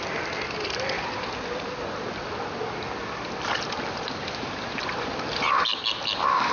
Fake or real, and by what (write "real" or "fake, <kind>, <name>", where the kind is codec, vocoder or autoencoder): real